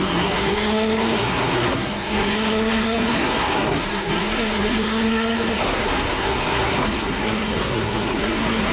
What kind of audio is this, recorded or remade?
remade